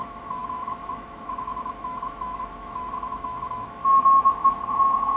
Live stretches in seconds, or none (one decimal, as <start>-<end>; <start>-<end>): none